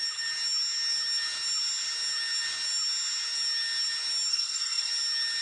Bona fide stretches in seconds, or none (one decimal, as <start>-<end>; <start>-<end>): 0.0-4.3; 4.9-5.4